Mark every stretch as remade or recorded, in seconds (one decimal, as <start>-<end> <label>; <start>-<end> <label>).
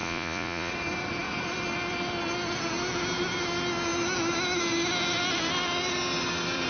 0.0-0.7 remade; 0.7-6.7 recorded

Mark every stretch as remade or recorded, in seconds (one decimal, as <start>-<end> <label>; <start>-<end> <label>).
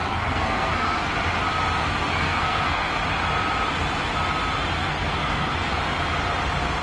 0.0-1.1 remade; 1.1-1.8 recorded; 1.8-2.9 remade; 2.9-4.8 recorded; 4.8-5.7 remade; 5.7-6.8 recorded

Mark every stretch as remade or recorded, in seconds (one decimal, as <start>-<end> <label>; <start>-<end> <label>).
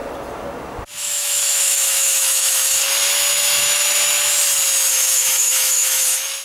0.0-1.0 recorded; 1.0-2.8 remade; 2.8-3.3 recorded; 3.3-3.8 remade; 3.8-4.9 recorded; 4.9-6.4 remade